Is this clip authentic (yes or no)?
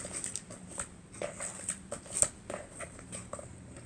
yes